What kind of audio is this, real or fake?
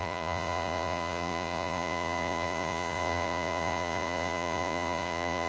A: fake